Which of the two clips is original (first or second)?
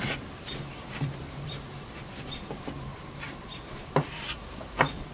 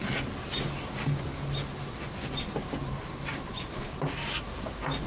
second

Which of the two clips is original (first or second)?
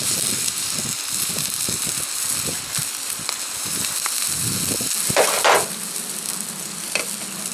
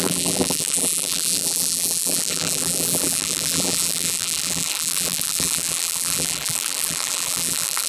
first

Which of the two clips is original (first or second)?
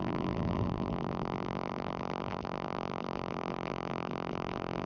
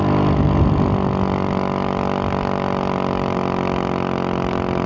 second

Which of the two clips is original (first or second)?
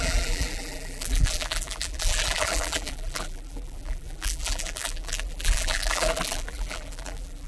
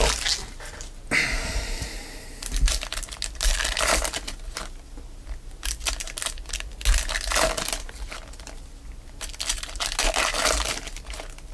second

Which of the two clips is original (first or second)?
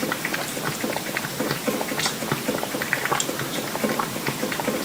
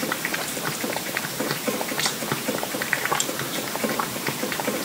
first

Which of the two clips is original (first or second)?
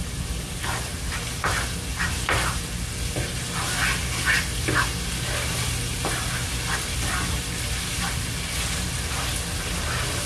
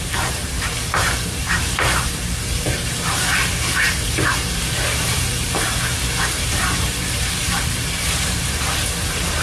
first